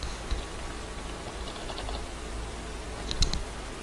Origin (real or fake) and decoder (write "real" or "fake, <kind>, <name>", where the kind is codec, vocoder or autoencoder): real